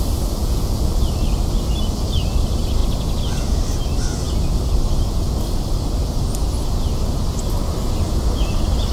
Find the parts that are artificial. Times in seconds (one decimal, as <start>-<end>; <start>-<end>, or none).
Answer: 0.4-0.9